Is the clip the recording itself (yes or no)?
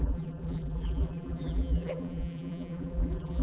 no